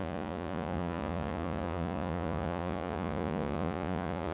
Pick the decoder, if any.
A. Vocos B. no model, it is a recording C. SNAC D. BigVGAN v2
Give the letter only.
A